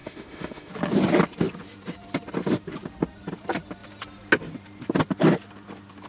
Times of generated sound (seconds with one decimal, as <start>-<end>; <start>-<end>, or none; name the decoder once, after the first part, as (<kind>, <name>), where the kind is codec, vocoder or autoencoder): 0.0-0.7 (autoencoder, DAC-VAE)